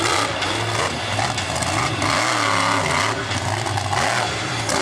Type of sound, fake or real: real